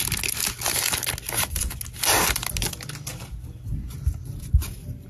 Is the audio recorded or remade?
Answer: recorded